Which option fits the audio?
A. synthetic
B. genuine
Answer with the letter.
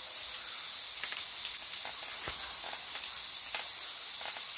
B